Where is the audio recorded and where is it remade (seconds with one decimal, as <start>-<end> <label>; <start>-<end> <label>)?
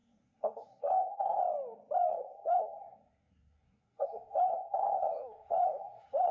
0.0-1.4 remade; 1.4-2.1 recorded; 2.1-6.3 remade